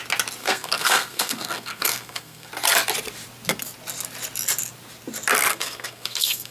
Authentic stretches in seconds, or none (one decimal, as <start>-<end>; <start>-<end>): 0.0-0.4; 2.5-5.5